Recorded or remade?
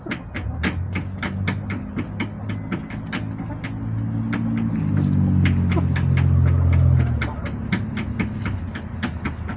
recorded